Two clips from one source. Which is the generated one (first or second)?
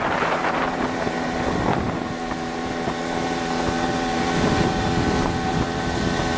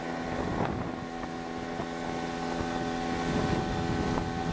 first